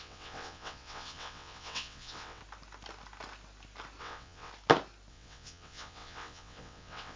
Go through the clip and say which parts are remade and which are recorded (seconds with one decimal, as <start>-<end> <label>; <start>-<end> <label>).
0.0-2.4 remade; 2.4-4.0 recorded; 4.0-4.5 remade; 4.5-5.1 recorded; 5.1-7.2 remade